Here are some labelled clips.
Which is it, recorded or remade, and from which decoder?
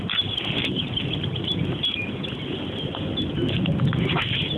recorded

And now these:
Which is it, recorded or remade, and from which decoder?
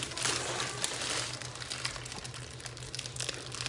recorded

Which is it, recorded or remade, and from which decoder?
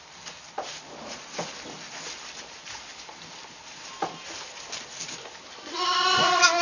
recorded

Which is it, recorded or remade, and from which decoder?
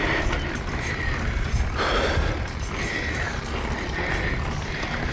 recorded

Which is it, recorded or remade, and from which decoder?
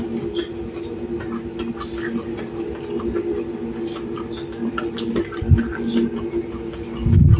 recorded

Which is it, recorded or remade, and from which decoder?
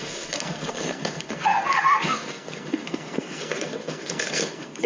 remade, codec, SNAC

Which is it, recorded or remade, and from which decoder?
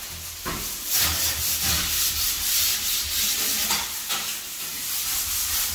recorded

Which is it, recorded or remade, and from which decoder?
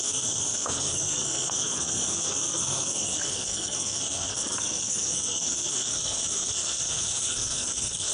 remade, codec, SNAC